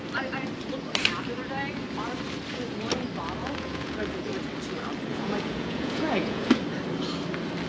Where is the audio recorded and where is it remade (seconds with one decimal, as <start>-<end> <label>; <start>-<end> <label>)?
0.0-3.4 recorded; 3.4-4.3 remade; 4.3-5.1 recorded; 5.1-6.5 remade; 6.5-7.7 recorded